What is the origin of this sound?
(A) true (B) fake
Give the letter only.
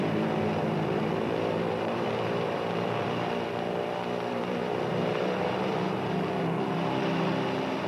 B